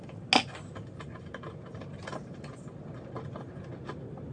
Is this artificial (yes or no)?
no